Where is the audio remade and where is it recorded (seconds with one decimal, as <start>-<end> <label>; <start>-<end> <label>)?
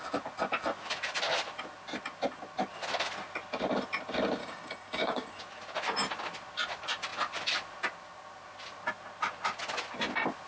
0.0-4.4 recorded; 4.4-5.4 remade; 5.4-10.5 recorded